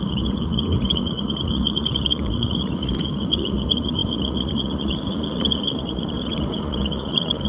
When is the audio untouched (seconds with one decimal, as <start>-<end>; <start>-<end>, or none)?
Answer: none

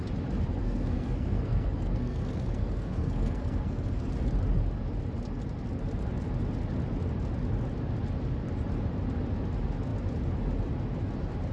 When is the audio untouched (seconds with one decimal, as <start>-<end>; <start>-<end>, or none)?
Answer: 0.0-0.6; 4.1-11.5